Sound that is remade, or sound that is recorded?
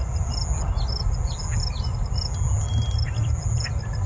recorded